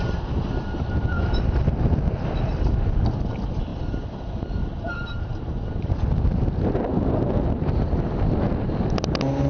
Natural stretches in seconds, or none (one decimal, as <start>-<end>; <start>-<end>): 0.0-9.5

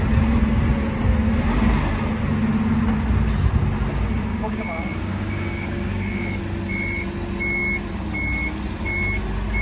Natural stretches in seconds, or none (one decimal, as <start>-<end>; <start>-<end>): 0.0-4.3; 6.4-9.6

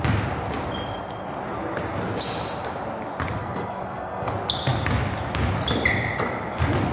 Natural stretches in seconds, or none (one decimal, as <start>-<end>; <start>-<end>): 0.0-3.4; 4.3-6.9

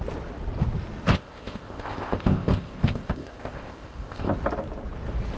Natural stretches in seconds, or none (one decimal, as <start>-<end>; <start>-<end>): 0.0-1.1; 4.3-5.4